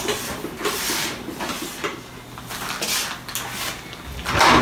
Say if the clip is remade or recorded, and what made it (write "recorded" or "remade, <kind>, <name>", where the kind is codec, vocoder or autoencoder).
recorded